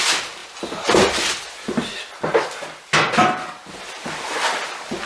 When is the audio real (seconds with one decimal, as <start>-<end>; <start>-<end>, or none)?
0.0-5.1